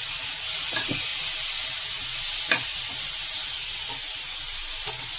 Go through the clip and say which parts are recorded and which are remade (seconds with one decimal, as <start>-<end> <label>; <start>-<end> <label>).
0.0-5.2 recorded